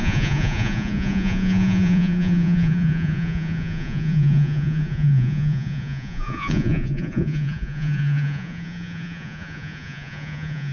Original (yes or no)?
no